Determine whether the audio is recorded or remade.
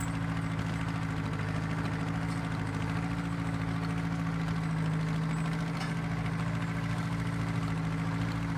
recorded